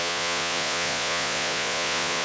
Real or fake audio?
fake